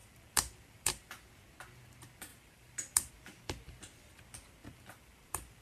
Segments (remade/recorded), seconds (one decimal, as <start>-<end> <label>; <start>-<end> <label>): 0.0-1.3 remade; 1.3-2.3 recorded; 2.3-3.1 remade; 3.1-4.6 recorded; 4.6-5.6 remade